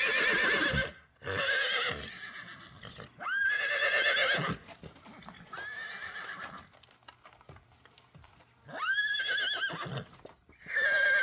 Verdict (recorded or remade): recorded